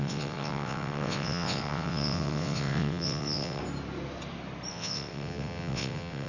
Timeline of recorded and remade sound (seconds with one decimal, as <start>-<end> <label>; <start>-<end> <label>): 0.0-3.6 remade; 3.6-4.7 recorded; 4.7-6.3 remade